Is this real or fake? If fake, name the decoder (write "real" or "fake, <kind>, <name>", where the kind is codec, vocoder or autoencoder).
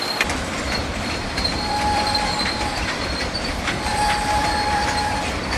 fake, vocoder, BigVGAN v2